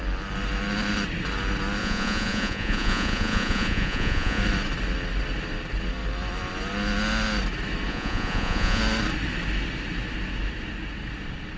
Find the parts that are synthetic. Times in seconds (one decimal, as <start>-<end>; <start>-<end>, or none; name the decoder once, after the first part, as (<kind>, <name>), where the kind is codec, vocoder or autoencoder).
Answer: 1.8-4.4 (vocoder, Vocos); 7.9-8.8